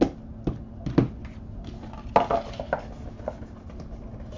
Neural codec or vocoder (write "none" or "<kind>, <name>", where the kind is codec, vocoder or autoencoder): none